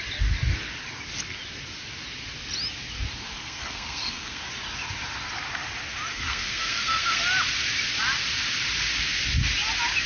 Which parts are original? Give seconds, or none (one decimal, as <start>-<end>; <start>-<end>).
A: 0.0-3.2; 4.4-6.1; 7.2-10.1